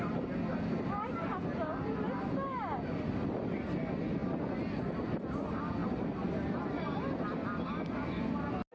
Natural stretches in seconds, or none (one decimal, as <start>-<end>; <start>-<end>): 0.0-8.7